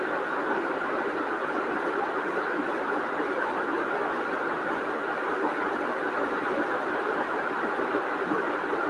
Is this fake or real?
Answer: real